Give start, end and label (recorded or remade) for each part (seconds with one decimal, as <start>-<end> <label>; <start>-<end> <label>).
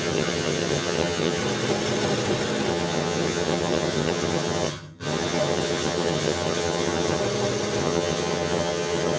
0.0-1.4 remade; 1.4-2.7 recorded; 2.7-7.2 remade; 7.2-7.8 recorded; 7.8-9.2 remade